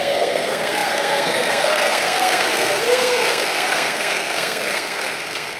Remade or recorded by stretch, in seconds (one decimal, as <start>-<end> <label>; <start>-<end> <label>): 0.0-5.6 remade